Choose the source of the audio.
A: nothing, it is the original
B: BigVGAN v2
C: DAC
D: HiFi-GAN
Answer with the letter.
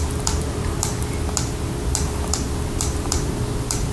A